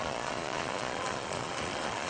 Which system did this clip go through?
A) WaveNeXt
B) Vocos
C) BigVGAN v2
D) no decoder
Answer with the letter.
B